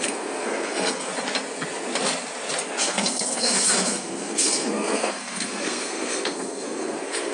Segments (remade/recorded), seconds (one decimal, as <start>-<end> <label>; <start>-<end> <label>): 0.0-1.1 remade; 1.1-2.8 recorded; 2.8-7.3 remade